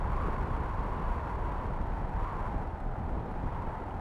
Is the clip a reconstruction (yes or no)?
no